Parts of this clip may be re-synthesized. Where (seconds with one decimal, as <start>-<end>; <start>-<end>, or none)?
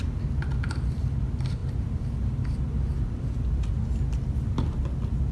none